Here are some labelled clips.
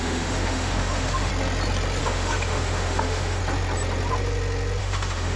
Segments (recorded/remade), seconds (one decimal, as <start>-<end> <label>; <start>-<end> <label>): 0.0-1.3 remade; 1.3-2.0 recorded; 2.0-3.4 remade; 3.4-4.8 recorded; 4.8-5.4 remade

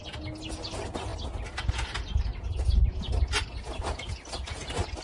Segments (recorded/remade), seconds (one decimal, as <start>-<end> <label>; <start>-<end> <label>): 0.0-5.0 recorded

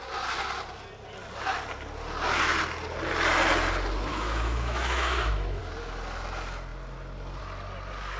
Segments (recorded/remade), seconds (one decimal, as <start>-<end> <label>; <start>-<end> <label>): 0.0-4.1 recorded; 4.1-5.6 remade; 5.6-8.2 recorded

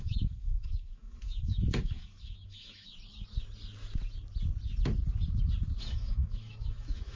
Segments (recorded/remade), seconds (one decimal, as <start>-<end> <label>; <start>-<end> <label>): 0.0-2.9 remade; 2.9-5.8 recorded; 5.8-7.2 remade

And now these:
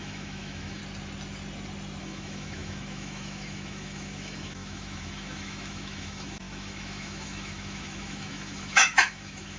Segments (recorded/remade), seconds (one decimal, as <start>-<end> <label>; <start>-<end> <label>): 0.0-0.8 remade; 0.8-2.0 recorded; 2.0-9.6 remade

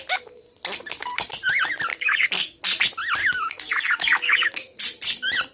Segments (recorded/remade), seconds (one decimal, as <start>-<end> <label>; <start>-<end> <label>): 0.0-1.9 recorded; 1.9-2.6 remade; 2.6-3.2 recorded; 3.2-4.8 remade; 4.8-5.5 recorded

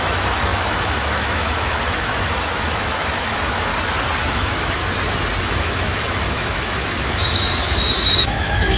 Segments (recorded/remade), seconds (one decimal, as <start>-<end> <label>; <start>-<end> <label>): 0.0-3.7 remade; 3.7-4.3 recorded; 4.3-4.8 remade; 4.8-5.4 recorded; 5.4-8.8 remade